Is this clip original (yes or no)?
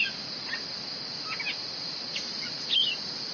yes